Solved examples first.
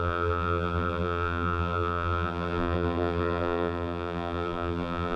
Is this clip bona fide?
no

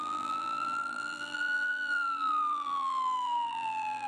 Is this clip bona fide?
no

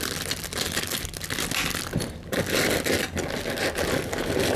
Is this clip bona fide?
yes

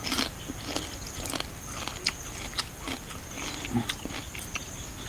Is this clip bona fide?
yes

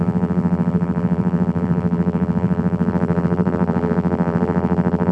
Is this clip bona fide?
no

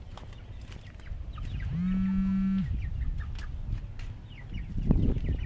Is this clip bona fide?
yes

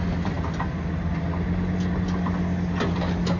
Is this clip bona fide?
yes